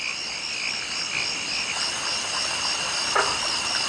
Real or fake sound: real